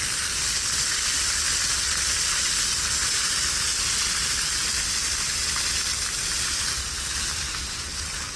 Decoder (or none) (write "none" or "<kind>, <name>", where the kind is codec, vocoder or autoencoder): none